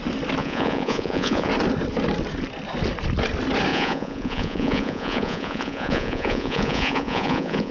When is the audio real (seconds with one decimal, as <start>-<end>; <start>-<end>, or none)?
0.0-0.4; 1.5-3.7